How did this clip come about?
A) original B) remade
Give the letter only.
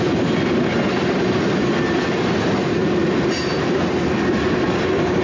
A